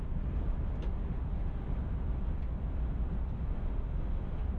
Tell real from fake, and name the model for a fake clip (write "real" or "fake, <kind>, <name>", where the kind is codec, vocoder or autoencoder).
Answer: real